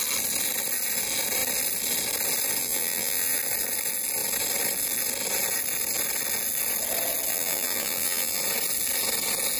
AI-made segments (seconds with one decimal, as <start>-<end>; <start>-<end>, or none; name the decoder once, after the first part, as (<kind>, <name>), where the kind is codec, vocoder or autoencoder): 2.6-3.4 (vocoder, BigVGAN v2); 7.3-8.4